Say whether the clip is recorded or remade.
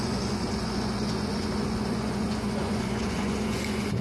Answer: remade